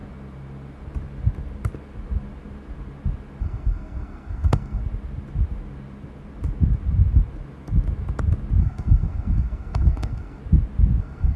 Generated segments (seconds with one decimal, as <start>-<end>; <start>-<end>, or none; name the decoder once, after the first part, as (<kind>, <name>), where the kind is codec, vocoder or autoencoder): 3.4-4.8 (codec, SNAC); 8.6-10.4; 11.0-11.4

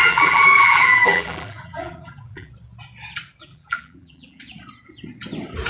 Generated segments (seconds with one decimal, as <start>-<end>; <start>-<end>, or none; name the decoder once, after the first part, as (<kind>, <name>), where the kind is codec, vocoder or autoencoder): 0.0-2.5 (vocoder, BigVGAN v2); 3.4-4.4

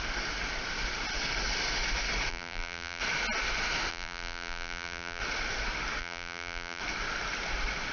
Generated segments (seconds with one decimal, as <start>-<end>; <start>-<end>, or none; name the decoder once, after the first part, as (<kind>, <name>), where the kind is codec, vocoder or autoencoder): 2.3-3.0 (vocoder, BigVGAN v2); 3.9-5.2; 6.0-6.8